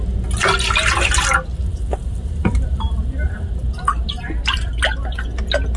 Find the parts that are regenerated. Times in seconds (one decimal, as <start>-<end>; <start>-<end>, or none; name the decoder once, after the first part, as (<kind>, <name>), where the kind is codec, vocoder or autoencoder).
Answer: 1.7-4.6 (vocoder, BigVGAN v2)